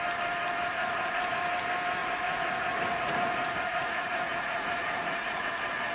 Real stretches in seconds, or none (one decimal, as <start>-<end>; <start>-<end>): 0.0-0.7; 1.4-2.0; 5.5-5.9